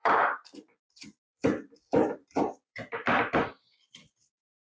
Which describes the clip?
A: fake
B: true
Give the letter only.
A